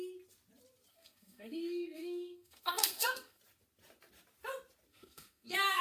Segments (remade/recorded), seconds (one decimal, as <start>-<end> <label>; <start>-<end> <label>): 0.0-0.9 recorded; 0.9-3.4 remade; 3.4-4.9 recorded; 4.9-5.8 remade